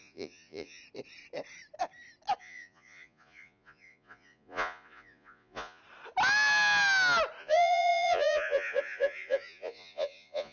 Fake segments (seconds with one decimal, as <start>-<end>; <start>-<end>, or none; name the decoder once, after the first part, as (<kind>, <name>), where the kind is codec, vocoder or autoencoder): 0.0-0.8 (vocoder, Vocos); 2.4-5.8; 7.4-10.5

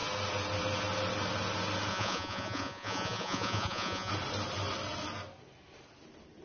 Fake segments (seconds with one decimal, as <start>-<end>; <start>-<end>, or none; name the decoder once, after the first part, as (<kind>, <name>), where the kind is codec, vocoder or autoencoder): 1.9-4.1 (vocoder, Vocos)

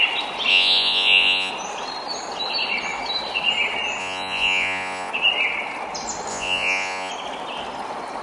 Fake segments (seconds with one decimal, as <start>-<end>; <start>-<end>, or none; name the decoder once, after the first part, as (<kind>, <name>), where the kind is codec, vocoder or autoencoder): 0.5-1.5 (vocoder, Vocos); 4.0-5.1; 6.3-7.1

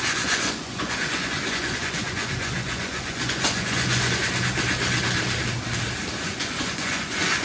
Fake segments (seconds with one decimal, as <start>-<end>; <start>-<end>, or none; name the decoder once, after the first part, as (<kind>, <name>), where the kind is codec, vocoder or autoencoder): 0.0-4.2 (vocoder, Vocos); 6.2-7.4